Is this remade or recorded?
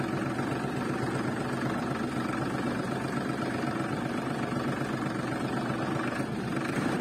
remade